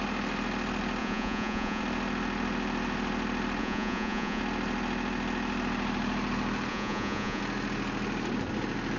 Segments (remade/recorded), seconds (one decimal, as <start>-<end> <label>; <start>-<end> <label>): 0.0-1.0 recorded; 1.0-1.8 remade; 1.8-3.6 recorded; 3.6-4.4 remade; 4.4-6.7 recorded; 6.7-7.4 remade; 7.4-9.0 recorded

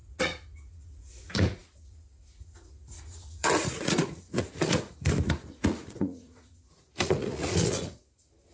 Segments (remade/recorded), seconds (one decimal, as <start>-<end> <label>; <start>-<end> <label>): 0.0-8.5 remade

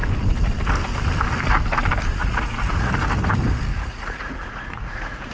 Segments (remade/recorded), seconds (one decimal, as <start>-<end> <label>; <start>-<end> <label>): 0.0-2.2 recorded; 2.2-2.9 remade; 2.9-3.7 recorded; 3.7-5.3 remade

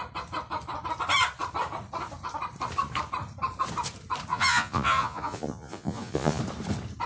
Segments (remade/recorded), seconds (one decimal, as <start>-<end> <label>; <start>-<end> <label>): 0.0-4.3 recorded; 4.3-6.4 remade; 6.4-7.1 recorded

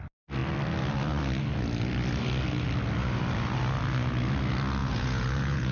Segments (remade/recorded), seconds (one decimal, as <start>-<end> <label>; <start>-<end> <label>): 0.0-4.8 recorded; 4.8-5.7 remade

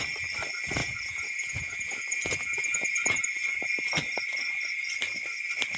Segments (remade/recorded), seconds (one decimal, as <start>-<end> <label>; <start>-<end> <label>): 0.0-0.8 recorded; 0.8-3.2 remade; 3.2-5.8 recorded